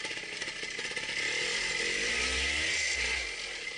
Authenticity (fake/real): real